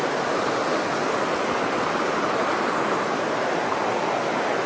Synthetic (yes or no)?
no